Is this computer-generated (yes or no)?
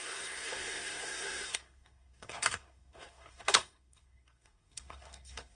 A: yes